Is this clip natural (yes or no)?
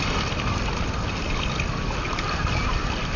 yes